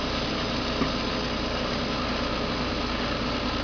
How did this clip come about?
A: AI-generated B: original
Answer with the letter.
B